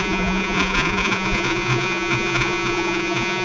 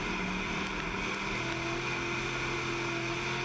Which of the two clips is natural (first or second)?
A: second